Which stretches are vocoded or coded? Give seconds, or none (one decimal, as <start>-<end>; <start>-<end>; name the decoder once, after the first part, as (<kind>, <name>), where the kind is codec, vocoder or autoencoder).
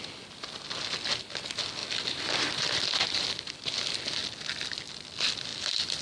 1.8-3.5 (vocoder, BigVGAN v2); 4.2-4.8; 5.5-6.0